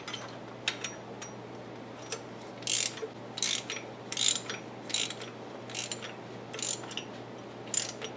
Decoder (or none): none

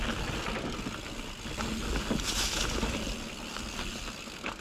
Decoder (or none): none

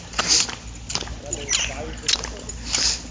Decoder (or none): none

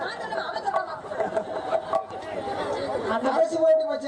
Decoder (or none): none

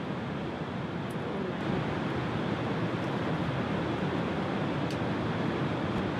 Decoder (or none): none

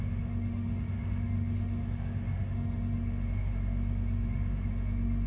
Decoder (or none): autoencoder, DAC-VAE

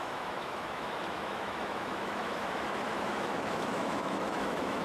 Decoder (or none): autoencoder, DAC-VAE